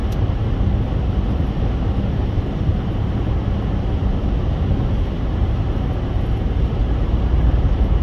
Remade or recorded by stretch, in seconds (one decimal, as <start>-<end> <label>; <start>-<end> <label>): 0.0-8.0 recorded